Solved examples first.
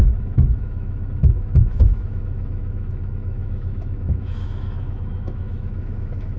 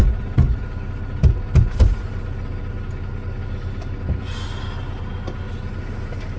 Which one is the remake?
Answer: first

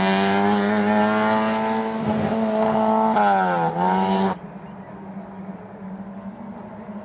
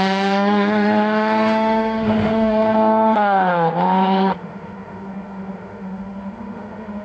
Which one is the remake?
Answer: second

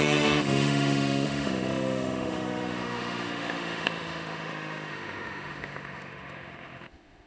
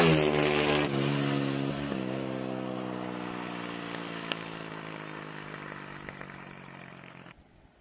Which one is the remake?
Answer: first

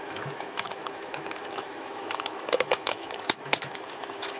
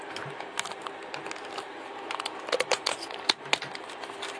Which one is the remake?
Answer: first